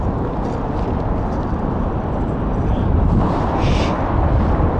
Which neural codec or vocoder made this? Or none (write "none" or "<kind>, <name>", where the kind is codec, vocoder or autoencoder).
none